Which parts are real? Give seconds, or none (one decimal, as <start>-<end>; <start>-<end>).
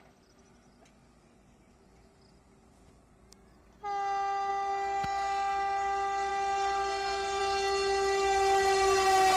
0.0-9.4